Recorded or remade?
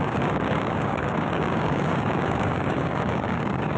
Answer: remade